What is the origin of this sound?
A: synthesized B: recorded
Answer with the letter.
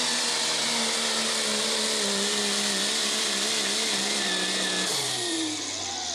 B